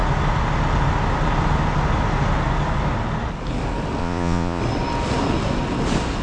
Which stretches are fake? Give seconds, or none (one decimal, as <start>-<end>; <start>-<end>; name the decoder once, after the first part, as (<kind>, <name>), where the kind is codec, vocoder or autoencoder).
4.0-4.6 (vocoder, Vocos)